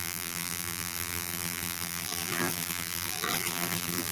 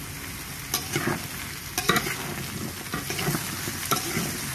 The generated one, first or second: first